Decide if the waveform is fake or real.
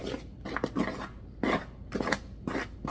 real